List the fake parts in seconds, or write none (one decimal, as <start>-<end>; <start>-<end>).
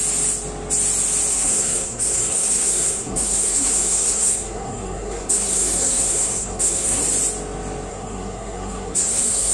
1.3-7.0; 7.9-9.5